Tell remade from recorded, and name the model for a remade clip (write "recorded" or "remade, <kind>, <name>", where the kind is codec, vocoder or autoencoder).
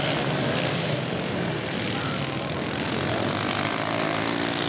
recorded